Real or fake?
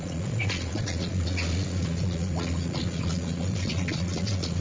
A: fake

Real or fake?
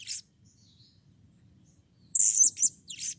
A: real